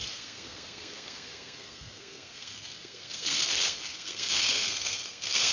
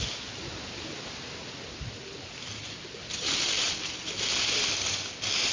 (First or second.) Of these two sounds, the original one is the second